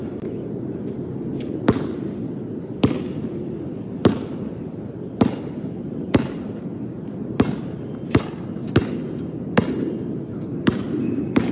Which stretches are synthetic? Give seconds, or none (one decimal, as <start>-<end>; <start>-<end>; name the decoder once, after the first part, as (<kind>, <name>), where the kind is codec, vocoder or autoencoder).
none